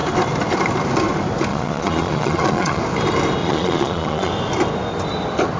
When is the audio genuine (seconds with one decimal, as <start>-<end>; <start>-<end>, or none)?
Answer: 0.0-1.5; 2.8-3.4; 4.3-5.6